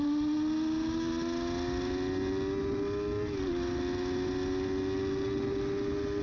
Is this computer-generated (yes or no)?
no